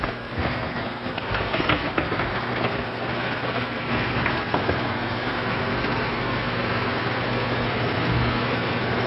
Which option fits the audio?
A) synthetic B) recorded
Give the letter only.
A